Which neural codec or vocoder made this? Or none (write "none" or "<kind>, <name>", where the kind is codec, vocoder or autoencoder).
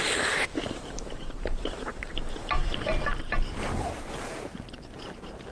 vocoder, BigVGAN v2